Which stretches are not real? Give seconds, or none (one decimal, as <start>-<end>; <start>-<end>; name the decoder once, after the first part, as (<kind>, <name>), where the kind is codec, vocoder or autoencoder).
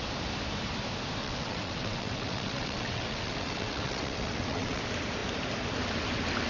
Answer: 1.2-4.8 (vocoder, WaveNeXt)